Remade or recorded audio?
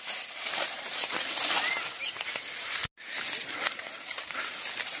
recorded